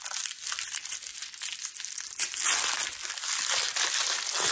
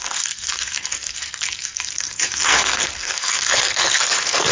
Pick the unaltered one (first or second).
first